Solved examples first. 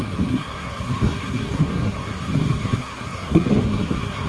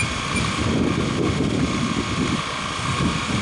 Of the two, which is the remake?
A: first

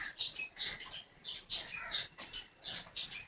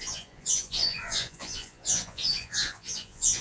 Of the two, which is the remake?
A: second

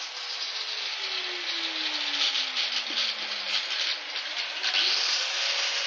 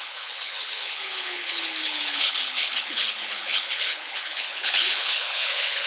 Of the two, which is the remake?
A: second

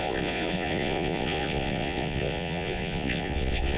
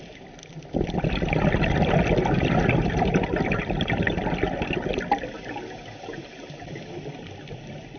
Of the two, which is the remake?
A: first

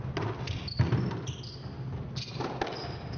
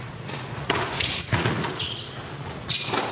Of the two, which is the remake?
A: second